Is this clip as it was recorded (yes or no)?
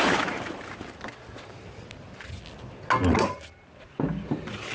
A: yes